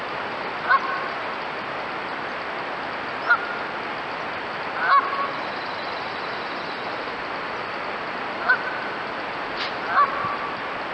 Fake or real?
real